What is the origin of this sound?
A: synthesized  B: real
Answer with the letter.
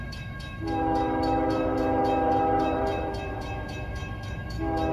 A